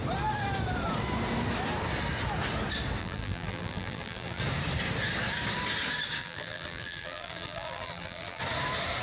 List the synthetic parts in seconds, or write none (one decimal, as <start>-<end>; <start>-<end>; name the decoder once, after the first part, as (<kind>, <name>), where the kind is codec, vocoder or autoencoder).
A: 3.0-4.4 (vocoder, BigVGAN v2); 6.2-8.4